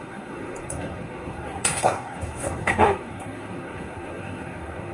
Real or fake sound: fake